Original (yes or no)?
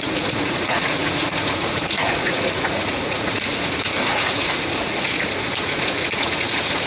no